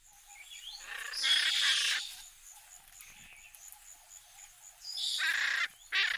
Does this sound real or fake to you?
real